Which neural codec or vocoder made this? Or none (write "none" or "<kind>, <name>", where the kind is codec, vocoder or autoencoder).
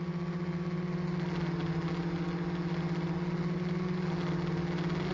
none